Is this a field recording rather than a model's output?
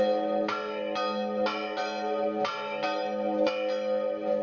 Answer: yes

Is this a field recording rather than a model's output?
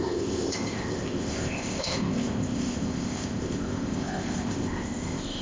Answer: no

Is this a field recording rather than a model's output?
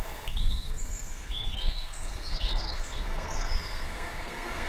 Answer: no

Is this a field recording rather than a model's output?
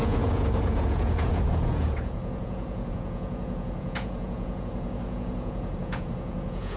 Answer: no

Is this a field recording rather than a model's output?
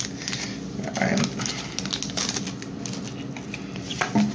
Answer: yes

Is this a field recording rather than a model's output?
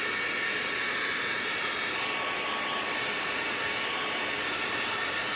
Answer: yes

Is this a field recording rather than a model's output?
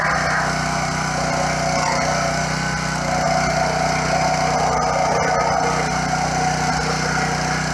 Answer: yes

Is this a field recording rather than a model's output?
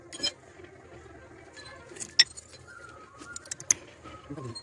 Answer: yes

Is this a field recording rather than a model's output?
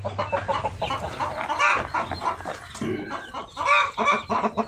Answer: yes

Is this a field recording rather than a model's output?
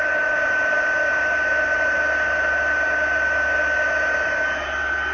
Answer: yes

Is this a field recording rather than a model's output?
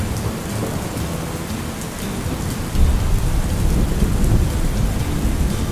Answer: yes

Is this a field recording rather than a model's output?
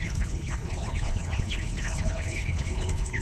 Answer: no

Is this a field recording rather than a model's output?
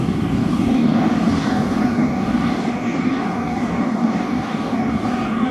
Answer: no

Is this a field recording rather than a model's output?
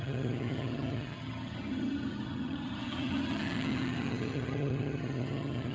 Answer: no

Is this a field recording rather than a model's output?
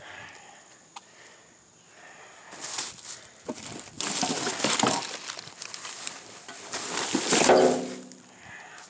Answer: yes